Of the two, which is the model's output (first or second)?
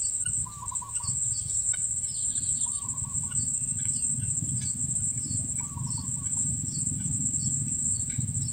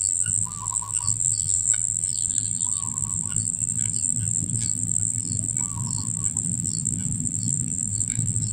second